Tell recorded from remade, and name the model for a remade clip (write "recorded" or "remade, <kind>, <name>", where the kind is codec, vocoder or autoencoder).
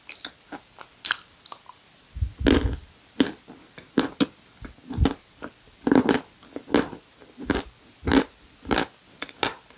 recorded